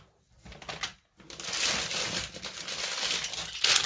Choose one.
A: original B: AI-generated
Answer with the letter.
A